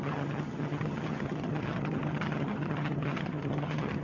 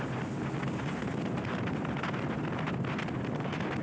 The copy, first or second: first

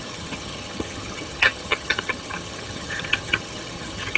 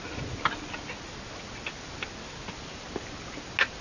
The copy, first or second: first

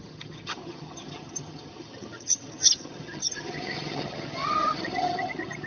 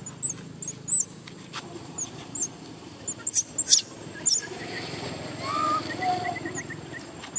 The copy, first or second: first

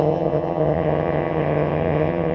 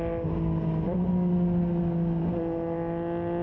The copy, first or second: first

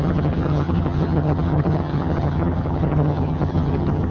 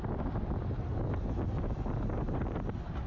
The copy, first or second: first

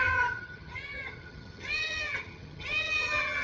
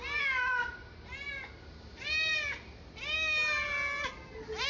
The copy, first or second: first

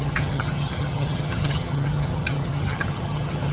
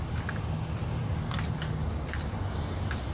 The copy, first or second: first